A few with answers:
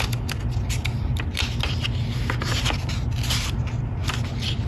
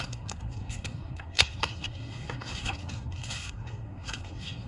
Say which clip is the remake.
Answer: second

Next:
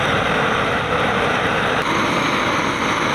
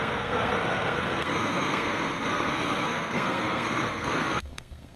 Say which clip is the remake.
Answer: second